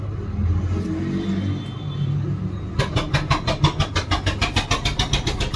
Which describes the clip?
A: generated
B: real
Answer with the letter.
B